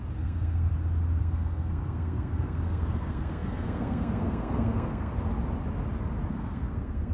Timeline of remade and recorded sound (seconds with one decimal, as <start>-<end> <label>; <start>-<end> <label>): 0.0-0.7 remade; 0.7-1.2 recorded; 1.2-5.1 remade; 5.1-6.3 recorded; 6.3-7.1 remade